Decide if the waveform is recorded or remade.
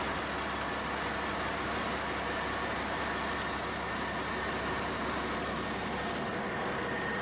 recorded